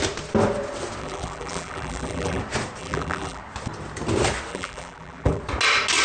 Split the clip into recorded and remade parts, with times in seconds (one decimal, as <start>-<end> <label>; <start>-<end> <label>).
0.0-1.0 recorded; 1.0-2.4 remade; 2.4-2.8 recorded; 2.8-3.4 remade; 3.4-4.5 recorded; 4.5-5.4 remade; 5.4-6.0 recorded

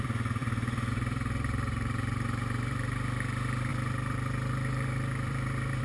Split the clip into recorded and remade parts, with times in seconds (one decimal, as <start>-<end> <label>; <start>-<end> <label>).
0.0-5.8 remade